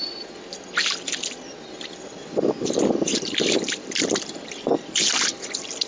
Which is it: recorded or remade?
recorded